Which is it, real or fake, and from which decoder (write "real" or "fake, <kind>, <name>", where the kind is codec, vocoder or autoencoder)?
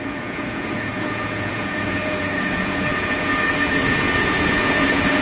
fake, vocoder, Vocos